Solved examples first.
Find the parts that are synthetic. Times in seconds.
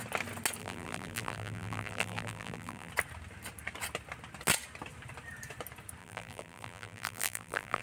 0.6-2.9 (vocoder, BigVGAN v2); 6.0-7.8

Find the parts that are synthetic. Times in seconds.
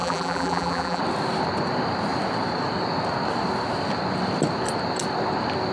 0.0-1.0 (vocoder, BigVGAN v2)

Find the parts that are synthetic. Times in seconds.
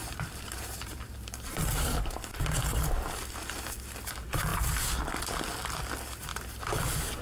0.0-2.2 (vocoder, BigVGAN v2); 6.3-7.2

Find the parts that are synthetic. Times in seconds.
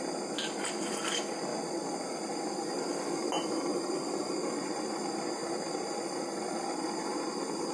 1.5-2.8 (vocoder, BigVGAN v2); 3.7-4.3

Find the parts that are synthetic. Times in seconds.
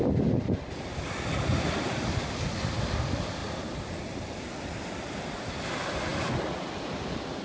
0.0-7.4 (vocoder, BigVGAN v2)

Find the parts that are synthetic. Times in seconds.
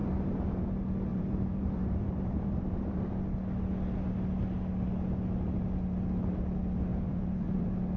0.0-0.6 (vocoder, BigVGAN v2); 1.1-3.1; 6.9-7.6